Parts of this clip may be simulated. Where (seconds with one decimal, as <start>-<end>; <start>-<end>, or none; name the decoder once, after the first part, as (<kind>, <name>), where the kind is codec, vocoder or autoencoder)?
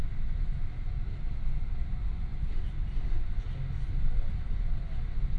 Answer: none